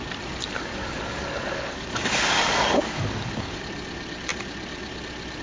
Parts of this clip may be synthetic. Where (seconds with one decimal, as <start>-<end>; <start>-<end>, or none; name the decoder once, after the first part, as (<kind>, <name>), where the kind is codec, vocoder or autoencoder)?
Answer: 0.4-3.6 (codec, DAC)